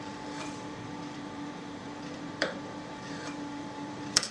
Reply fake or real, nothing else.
fake